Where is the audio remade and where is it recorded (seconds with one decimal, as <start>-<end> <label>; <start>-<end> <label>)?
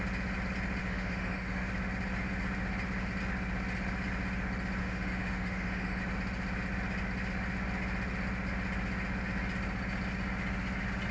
0.0-0.8 recorded; 0.8-1.7 remade; 1.7-4.8 recorded; 4.8-6.0 remade; 6.0-11.1 recorded